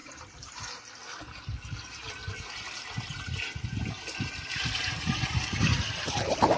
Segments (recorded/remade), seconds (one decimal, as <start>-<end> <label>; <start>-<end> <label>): 0.0-0.6 remade; 0.6-6.6 recorded